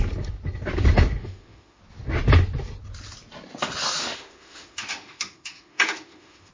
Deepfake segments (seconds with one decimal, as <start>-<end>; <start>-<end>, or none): 1.2-1.8; 4.0-6.5